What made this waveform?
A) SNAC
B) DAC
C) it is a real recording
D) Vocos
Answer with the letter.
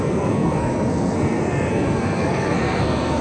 A